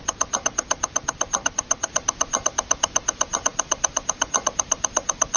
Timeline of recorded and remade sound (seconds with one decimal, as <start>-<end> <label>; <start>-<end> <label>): 0.0-3.5 recorded; 3.5-5.4 remade